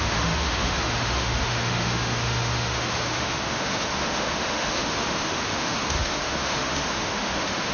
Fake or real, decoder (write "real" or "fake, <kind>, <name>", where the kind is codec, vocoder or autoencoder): fake, autoencoder, DAC-VAE